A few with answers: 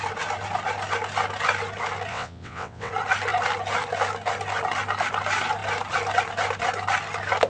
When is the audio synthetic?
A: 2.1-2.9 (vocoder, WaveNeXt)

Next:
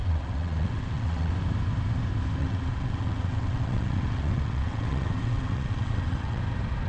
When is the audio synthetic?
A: 0.0-1.3 (vocoder, WaveNeXt); 2.4-6.4

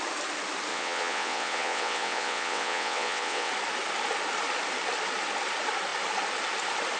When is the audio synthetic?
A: 0.7-3.5 (vocoder, WaveNeXt)

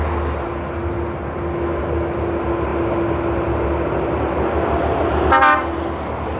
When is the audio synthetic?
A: none

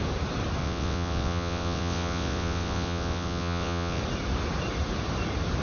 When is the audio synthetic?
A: 0.6-4.0 (vocoder, WaveNeXt)

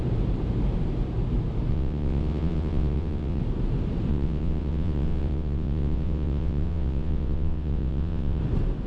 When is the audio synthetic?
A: 1.7-3.4 (vocoder, WaveNeXt); 4.1-8.4